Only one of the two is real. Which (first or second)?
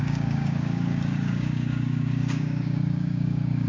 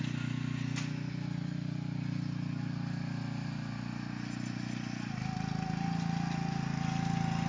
second